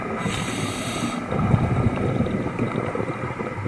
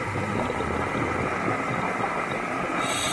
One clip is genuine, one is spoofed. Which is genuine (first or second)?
second